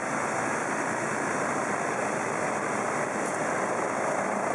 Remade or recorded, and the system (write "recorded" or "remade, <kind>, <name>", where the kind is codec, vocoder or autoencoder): recorded